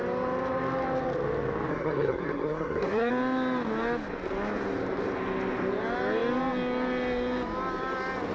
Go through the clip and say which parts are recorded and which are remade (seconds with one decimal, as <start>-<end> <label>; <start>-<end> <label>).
0.0-1.7 recorded; 1.7-3.1 remade; 3.1-8.3 recorded